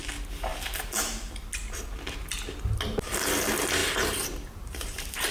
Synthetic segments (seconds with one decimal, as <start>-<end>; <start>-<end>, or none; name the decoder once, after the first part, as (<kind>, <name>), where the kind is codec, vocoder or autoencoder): 0.5-1.3 (vocoder, BigVGAN v2); 3.8-5.3